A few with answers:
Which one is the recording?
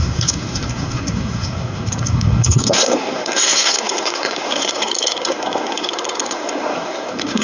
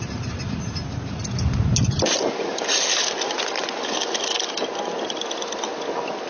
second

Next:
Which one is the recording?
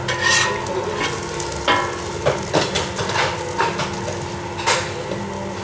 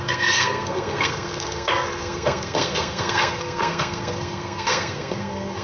first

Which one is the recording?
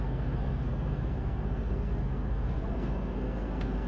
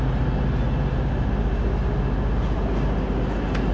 second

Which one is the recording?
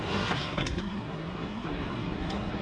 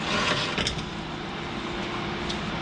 second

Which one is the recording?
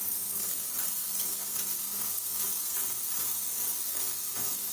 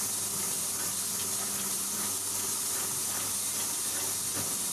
second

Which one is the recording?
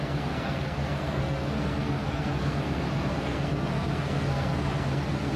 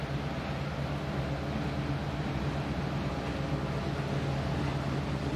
second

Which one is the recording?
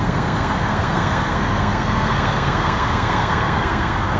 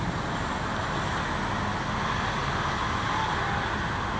second